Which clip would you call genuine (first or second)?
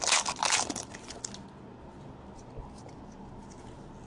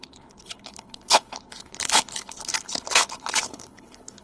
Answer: first